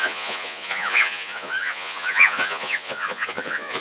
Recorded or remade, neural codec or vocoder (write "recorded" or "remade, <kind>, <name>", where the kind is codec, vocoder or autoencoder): remade, vocoder, Vocos